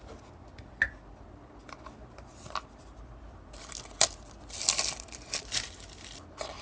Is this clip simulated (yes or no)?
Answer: no